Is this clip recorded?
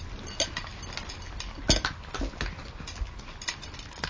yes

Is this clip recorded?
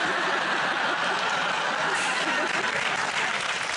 yes